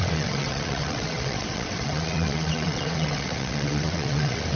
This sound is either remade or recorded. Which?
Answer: remade